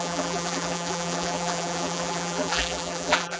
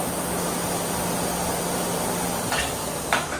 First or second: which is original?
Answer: second